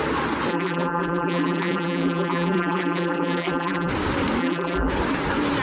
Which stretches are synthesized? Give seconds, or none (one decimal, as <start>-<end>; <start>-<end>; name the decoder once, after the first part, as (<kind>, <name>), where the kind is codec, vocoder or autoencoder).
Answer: 0.5-3.9 (vocoder, BigVGAN v2); 4.4-4.9